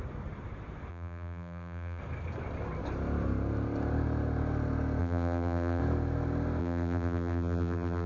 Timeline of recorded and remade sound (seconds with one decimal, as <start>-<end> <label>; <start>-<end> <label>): 0.0-0.9 recorded; 0.9-2.0 remade; 2.0-5.0 recorded; 5.0-5.8 remade; 5.8-6.6 recorded; 6.6-8.1 remade